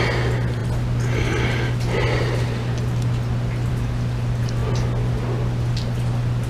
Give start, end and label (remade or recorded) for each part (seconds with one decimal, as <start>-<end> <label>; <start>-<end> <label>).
0.0-6.5 recorded